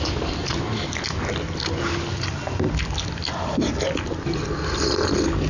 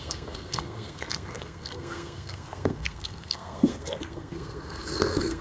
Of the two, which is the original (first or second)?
first